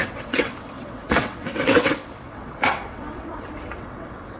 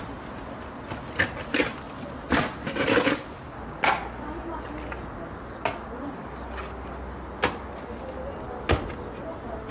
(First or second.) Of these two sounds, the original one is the second